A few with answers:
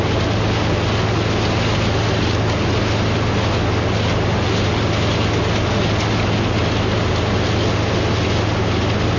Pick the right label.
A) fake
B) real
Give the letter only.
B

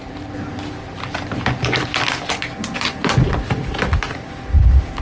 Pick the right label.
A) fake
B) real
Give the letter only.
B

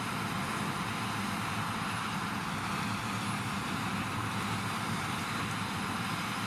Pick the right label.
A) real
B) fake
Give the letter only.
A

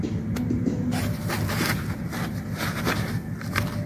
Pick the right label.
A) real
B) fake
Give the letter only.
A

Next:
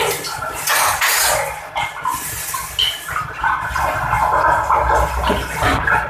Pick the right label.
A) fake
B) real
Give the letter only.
B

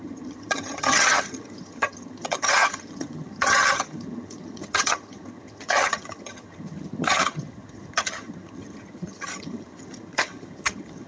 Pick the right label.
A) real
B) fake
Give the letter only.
B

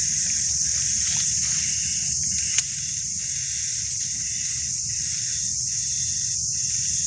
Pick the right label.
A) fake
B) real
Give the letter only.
B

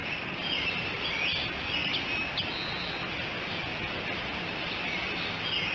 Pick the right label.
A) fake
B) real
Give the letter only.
B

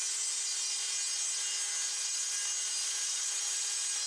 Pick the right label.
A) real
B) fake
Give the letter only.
A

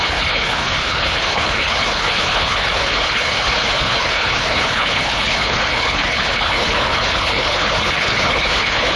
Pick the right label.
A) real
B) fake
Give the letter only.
B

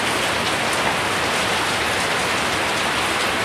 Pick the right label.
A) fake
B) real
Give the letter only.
B